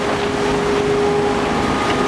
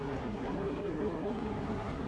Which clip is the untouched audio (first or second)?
first